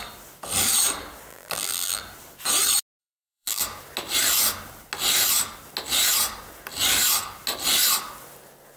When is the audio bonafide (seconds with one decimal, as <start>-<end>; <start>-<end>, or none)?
0.0-1.3; 2.0-3.0; 3.6-8.8